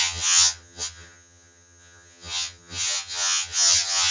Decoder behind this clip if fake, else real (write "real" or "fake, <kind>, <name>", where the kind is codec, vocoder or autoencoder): fake, vocoder, HiFi-GAN